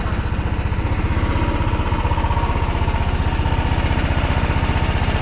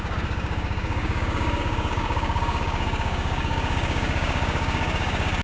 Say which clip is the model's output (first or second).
second